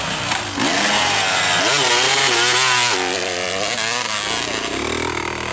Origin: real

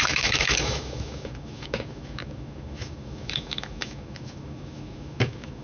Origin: fake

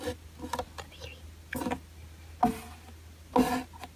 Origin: real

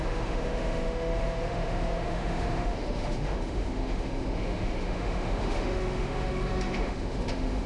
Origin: fake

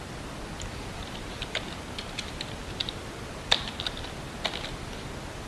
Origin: real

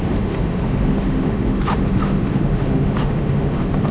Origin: fake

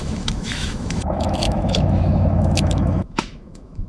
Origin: fake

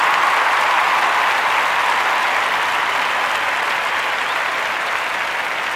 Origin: real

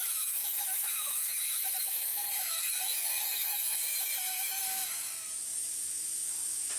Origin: fake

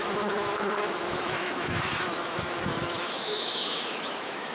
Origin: fake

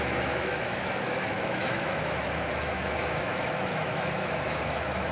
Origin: fake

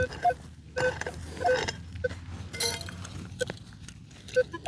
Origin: real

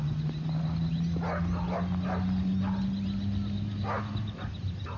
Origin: real